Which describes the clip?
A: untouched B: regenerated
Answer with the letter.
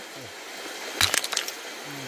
A